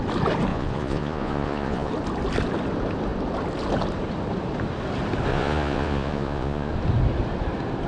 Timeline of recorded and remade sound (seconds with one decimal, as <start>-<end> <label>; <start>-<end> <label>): 0.0-0.5 recorded; 0.5-1.9 remade; 1.9-5.3 recorded; 5.3-6.7 remade; 6.7-7.9 recorded